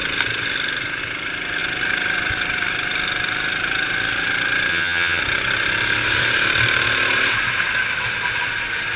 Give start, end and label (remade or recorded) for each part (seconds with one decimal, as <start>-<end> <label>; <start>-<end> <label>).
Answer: 0.0-4.7 recorded; 4.7-5.2 remade; 5.2-9.0 recorded